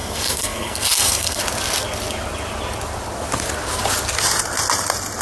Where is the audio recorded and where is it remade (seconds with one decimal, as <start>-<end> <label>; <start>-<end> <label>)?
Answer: 0.0-1.4 remade; 1.4-5.2 recorded